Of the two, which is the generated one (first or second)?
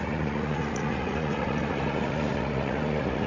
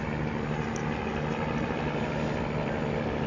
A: first